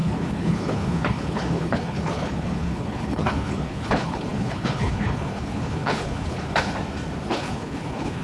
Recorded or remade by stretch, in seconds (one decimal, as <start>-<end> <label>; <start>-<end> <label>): 0.0-6.7 remade; 6.7-7.3 recorded; 7.3-8.2 remade